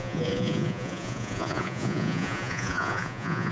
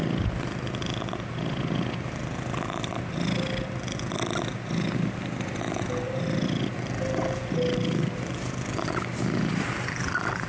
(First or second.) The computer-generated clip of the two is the first